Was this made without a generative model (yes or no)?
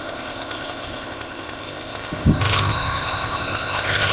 no